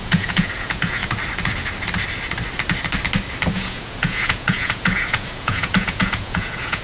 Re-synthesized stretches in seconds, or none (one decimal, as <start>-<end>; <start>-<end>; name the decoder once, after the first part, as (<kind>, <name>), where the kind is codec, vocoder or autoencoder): 0.0-1.0 (vocoder, Vocos); 3.5-6.8